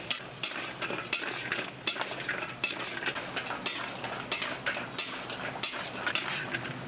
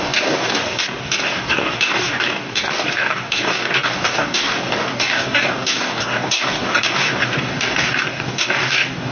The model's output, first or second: second